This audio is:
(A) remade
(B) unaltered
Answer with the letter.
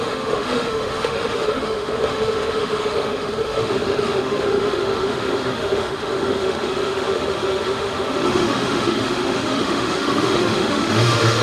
A